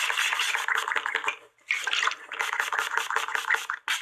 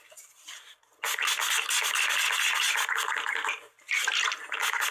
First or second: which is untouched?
second